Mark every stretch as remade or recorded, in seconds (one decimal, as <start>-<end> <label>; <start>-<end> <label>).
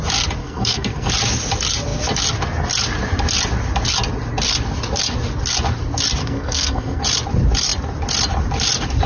0.0-0.4 recorded; 0.4-1.1 remade; 1.1-6.2 recorded; 6.2-7.0 remade; 7.0-9.1 recorded